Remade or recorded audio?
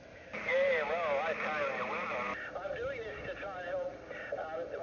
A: recorded